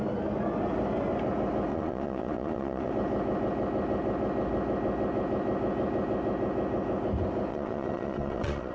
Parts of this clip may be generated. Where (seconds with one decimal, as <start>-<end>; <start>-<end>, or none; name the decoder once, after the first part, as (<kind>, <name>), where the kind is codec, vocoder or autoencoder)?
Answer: 1.7-2.9 (vocoder, Vocos); 7.5-8.7